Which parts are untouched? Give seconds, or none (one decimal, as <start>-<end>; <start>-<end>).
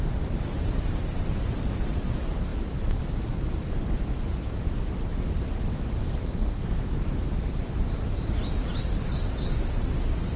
0.0-6.0; 7.0-10.4